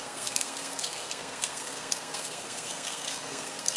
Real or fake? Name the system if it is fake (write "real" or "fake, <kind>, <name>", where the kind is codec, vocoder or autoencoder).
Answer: fake, codec, SNAC